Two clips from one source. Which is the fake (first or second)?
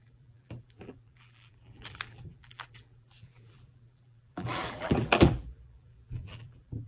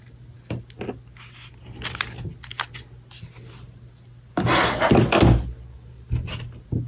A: first